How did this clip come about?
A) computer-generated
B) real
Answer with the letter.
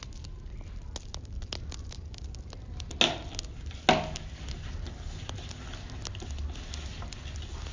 B